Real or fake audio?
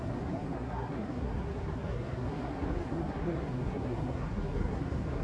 fake